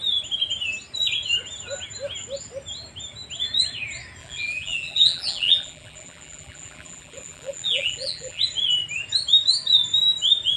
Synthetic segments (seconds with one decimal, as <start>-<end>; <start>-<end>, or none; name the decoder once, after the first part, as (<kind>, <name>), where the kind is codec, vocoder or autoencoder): 4.2-8.4 (vocoder, BigVGAN v2)